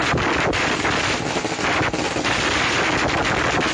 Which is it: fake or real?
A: real